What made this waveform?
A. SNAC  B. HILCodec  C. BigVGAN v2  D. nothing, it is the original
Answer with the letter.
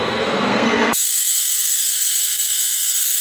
A